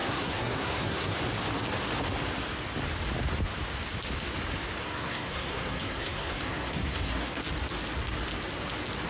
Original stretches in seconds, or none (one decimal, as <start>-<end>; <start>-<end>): 1.2-4.8; 7.4-9.1